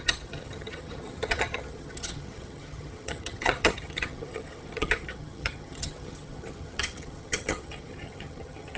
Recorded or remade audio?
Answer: remade